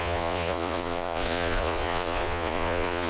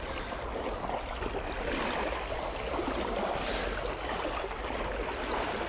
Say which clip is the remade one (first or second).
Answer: first